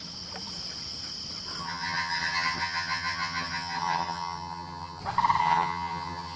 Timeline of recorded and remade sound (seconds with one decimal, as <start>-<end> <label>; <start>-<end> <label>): 0.0-1.6 recorded; 1.6-5.0 remade; 5.0-5.4 recorded; 5.4-6.4 remade